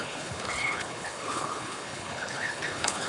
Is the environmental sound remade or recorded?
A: remade